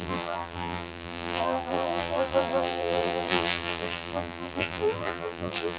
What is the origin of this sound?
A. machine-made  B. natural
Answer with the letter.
A